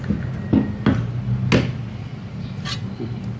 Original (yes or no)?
yes